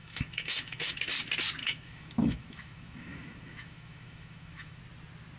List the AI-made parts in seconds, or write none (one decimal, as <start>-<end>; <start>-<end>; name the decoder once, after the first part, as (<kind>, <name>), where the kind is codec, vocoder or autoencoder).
0.0-0.9 (autoencoder, DAC-VAE); 1.6-4.8